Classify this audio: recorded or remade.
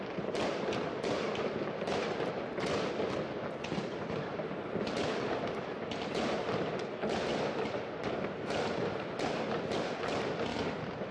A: recorded